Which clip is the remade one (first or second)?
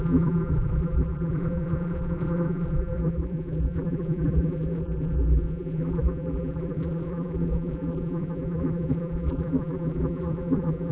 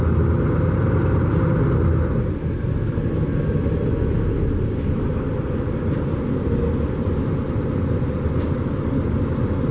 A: first